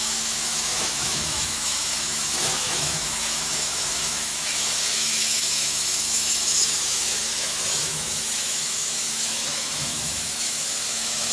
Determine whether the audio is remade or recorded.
remade